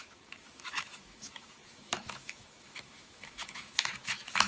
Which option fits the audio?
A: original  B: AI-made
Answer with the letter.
B